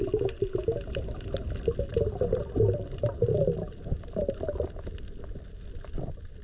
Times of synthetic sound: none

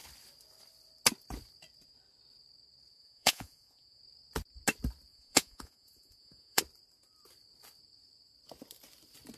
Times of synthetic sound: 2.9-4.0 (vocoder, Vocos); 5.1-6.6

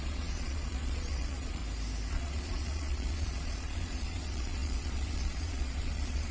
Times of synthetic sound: 0.0-1.6 (vocoder, Vocos); 2.1-6.3